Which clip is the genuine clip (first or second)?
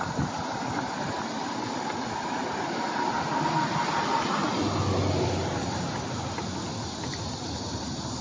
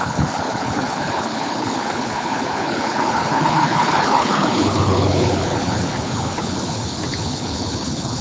first